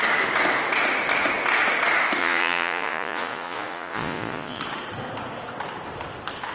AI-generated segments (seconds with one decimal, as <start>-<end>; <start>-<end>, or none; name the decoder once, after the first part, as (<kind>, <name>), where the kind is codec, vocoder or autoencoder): 2.2-4.6 (vocoder, Vocos)